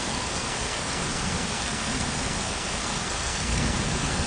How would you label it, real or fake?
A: fake